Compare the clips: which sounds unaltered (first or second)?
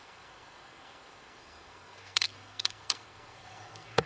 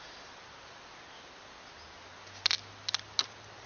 second